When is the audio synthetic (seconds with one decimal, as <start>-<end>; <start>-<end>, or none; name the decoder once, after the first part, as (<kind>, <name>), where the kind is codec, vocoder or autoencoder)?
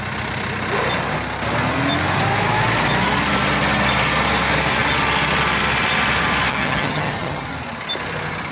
6.5-7.5 (vocoder, HiFi-GAN)